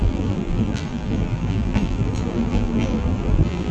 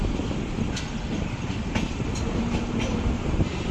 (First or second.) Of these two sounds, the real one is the second